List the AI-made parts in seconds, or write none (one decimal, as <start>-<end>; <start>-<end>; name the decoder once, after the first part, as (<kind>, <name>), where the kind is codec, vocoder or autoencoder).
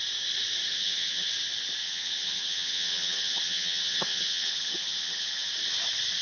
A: 0.7-1.3 (vocoder, HiFi-GAN); 1.8-5.5